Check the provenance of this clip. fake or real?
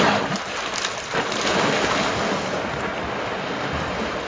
real